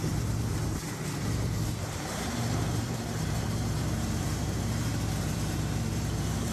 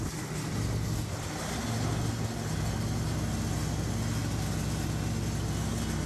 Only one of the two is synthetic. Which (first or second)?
first